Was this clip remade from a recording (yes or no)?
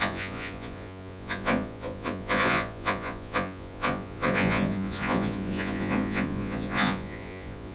yes